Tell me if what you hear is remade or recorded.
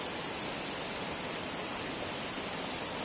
recorded